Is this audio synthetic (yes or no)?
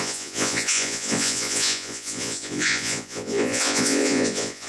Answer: yes